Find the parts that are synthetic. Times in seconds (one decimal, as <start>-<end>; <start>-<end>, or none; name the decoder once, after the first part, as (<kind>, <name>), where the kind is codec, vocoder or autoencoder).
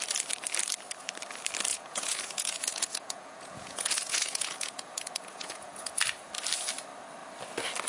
1.7-5.9 (vocoder, Vocos)